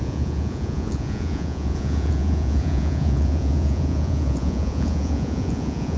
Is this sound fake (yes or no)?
yes